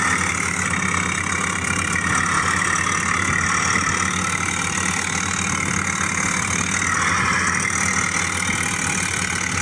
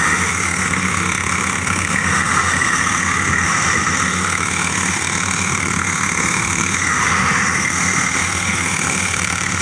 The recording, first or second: first